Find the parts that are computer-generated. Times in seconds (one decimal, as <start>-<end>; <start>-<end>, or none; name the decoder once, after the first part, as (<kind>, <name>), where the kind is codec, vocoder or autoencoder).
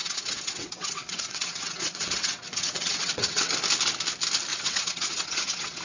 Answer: 0.0-3.5 (vocoder, WaveNeXt); 4.5-5.8